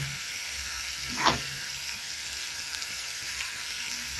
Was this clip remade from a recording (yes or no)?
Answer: yes